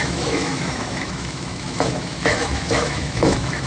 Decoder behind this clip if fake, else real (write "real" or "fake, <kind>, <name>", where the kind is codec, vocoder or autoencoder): fake, autoencoder, DAC-VAE